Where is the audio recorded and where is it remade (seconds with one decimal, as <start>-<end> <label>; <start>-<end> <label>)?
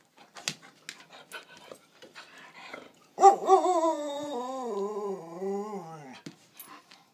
0.0-2.7 recorded; 2.7-4.3 remade; 4.3-7.1 recorded